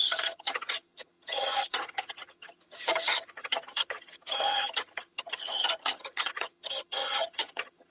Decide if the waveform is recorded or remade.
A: remade